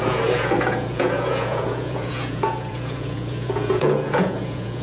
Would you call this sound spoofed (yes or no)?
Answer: yes